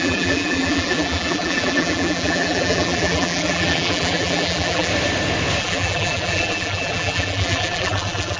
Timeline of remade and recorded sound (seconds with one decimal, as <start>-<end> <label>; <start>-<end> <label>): 0.0-4.9 remade; 4.9-5.6 recorded; 5.6-8.4 remade